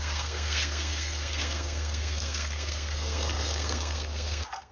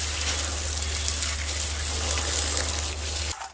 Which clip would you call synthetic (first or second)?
first